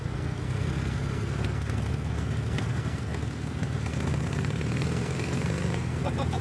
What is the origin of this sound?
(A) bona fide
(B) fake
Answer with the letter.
B